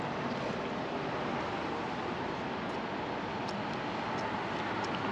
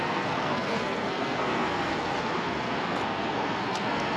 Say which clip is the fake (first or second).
second